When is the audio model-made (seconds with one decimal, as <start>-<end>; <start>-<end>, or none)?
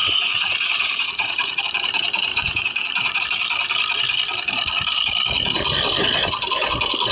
0.0-1.6; 2.3-3.2